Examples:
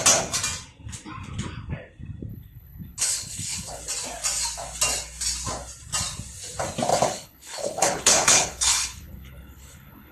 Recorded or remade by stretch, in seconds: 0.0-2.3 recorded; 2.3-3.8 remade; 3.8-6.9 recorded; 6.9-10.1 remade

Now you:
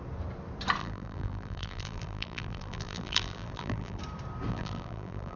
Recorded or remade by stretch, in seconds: 0.0-0.8 recorded; 0.8-4.0 remade; 4.0-4.5 recorded; 4.5-5.4 remade

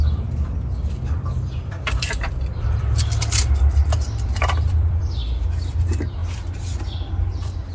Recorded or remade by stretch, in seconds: 0.0-5.2 remade; 5.2-5.7 recorded; 5.7-6.2 remade; 6.2-7.1 recorded; 7.1-7.7 remade

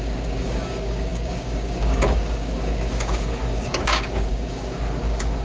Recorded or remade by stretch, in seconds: 0.0-5.4 remade

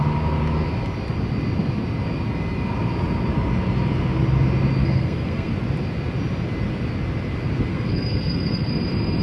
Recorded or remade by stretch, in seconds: 0.0-4.8 recorded; 4.8-5.5 remade; 5.5-7.7 recorded; 7.7-8.7 remade; 8.7-9.2 recorded